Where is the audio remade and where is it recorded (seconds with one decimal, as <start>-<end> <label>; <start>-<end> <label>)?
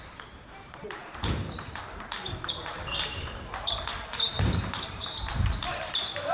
0.0-6.3 remade